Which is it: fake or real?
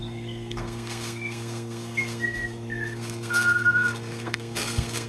fake